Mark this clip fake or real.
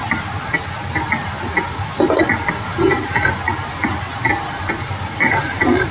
real